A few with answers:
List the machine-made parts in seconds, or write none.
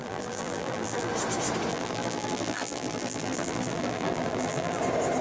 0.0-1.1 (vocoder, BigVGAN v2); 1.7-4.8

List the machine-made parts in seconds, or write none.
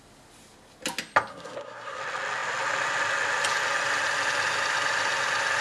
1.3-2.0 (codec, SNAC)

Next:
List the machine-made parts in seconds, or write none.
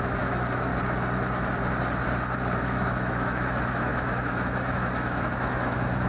0.0-0.7 (autoencoder, DAC-VAE); 2.6-6.1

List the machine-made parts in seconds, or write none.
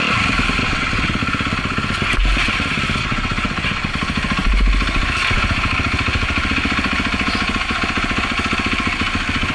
0.6-1.2 (vocoder, WaveNeXt); 3.0-3.9